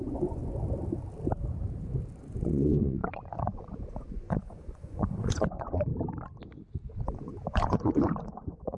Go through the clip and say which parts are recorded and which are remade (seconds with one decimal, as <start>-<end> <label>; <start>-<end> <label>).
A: 0.0-0.4 remade; 0.4-2.2 recorded; 2.2-5.9 remade; 5.9-7.1 recorded; 7.1-8.8 remade